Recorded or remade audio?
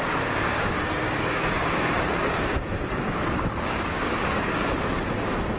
remade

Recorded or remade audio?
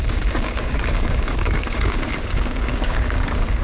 remade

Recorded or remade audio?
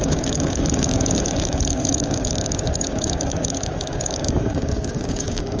remade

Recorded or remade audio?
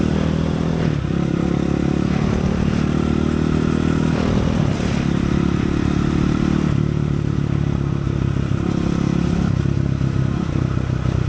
recorded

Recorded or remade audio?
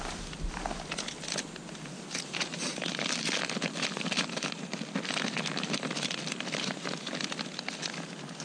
recorded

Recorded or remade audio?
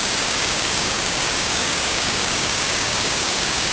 remade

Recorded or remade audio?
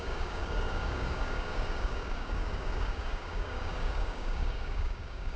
remade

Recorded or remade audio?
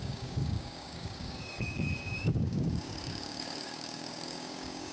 remade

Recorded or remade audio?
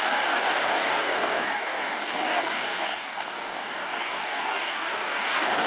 remade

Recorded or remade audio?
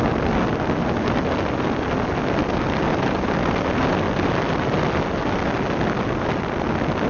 recorded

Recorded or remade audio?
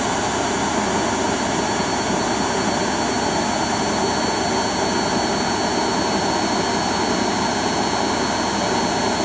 recorded